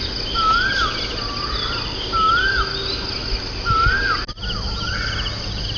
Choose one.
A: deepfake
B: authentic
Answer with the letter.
B